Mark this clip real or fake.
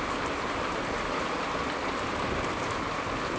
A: fake